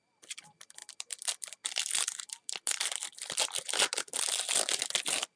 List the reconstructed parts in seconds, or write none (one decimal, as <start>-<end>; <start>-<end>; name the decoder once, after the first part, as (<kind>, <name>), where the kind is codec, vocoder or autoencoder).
none